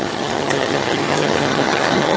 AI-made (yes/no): yes